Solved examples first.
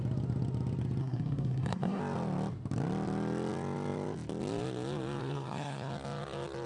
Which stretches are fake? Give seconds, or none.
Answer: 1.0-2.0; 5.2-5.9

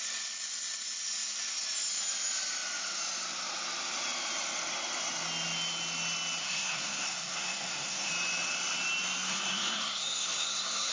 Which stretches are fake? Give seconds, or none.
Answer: 6.4-8.1; 9.3-10.9

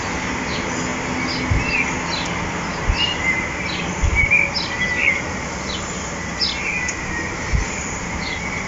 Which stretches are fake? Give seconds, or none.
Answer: none

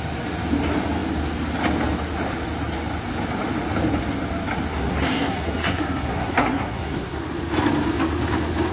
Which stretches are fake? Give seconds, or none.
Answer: 4.7-7.2

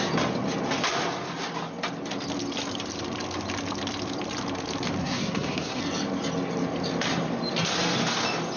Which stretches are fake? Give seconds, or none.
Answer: 5.0-5.8

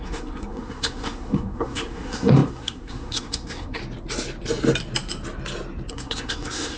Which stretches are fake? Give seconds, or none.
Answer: 0.0-3.8; 5.9-6.8

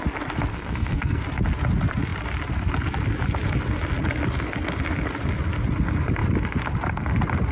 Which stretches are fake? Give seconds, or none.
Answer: 0.5-1.2